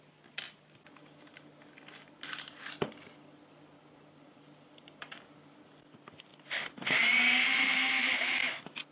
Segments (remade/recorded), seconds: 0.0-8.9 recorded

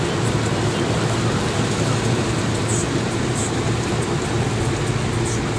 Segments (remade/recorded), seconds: 0.0-2.8 recorded; 2.8-3.9 remade; 3.9-5.6 recorded

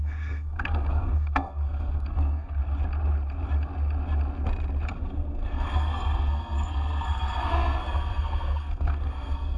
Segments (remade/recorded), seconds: 0.0-2.6 remade; 2.6-4.9 recorded; 4.9-9.6 remade

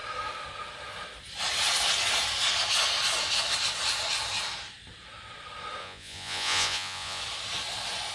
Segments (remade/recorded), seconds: 0.0-5.8 recorded; 5.8-7.2 remade; 7.2-8.1 recorded

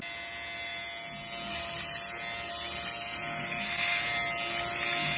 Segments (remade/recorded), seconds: 0.0-5.2 recorded

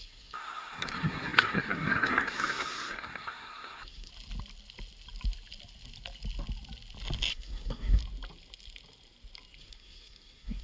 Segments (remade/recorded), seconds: 0.0-4.1 remade; 4.1-7.3 recorded; 7.3-8.0 remade; 8.0-9.6 recorded; 9.6-10.6 remade